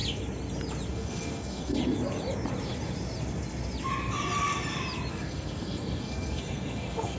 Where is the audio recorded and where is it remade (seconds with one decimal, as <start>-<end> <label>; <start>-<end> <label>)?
0.0-0.9 recorded; 0.9-1.8 remade; 1.8-5.1 recorded; 5.1-7.2 remade